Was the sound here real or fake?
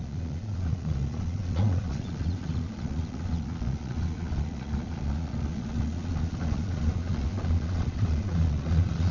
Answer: fake